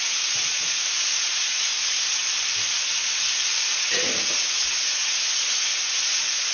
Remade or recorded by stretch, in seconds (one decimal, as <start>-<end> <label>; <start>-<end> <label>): 0.0-1.7 remade; 1.7-3.6 recorded; 3.6-6.5 remade